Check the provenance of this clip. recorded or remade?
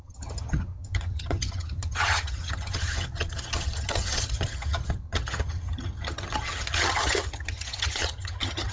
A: remade